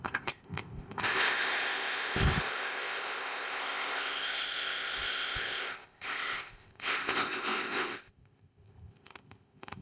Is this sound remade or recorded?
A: remade